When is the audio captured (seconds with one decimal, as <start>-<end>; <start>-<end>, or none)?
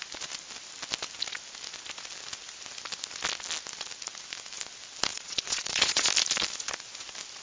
0.0-5.1; 6.1-7.4